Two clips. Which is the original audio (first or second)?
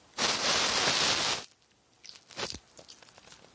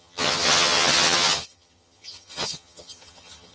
first